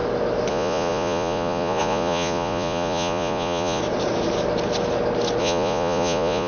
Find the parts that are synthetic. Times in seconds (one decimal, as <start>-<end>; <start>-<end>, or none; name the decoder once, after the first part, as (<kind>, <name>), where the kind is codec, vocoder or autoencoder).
0.5-3.8 (vocoder, Vocos); 5.4-6.5